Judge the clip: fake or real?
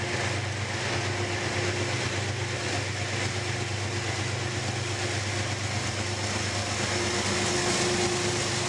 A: real